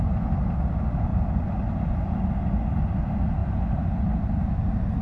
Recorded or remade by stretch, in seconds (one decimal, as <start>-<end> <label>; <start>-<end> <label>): 0.0-1.1 recorded; 1.1-2.4 remade; 2.4-3.4 recorded; 3.4-4.3 remade; 4.3-5.0 recorded

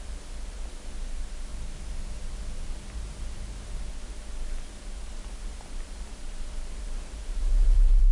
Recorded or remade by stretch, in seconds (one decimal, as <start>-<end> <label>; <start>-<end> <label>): 0.0-1.5 remade; 1.5-3.9 recorded; 3.9-8.1 remade

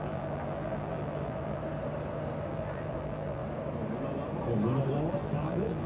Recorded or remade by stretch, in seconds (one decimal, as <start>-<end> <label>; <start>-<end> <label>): 0.0-1.6 remade; 1.6-2.5 recorded; 2.5-3.4 remade; 3.4-5.1 recorded; 5.1-5.9 remade

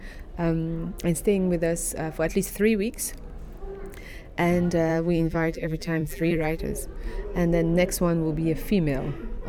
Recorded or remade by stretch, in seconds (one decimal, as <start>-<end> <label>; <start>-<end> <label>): 0.0-4.9 recorded; 4.9-6.6 remade; 6.6-9.5 recorded

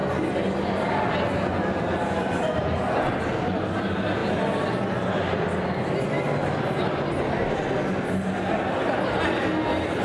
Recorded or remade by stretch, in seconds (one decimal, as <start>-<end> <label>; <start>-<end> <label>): 0.0-10.0 recorded

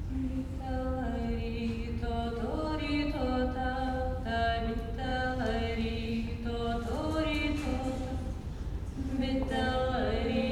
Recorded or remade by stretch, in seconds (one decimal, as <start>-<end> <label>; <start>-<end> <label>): 0.0-2.0 recorded; 2.0-3.1 remade; 3.1-7.7 recorded; 7.7-9.1 remade; 9.1-10.5 recorded